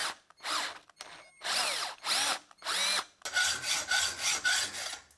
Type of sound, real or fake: real